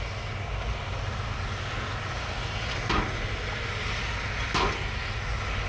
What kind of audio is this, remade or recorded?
recorded